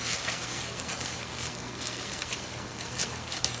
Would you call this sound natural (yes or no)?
no